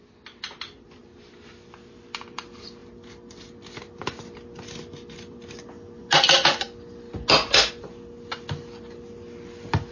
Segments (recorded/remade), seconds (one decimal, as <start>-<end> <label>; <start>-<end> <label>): 0.0-9.9 recorded